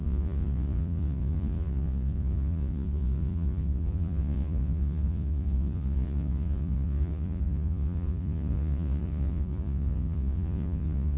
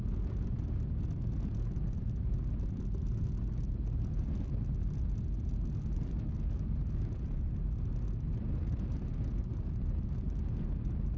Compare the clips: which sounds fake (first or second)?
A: first